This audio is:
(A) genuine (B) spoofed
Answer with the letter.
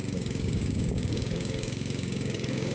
B